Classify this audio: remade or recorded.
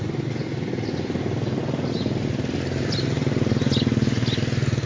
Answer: recorded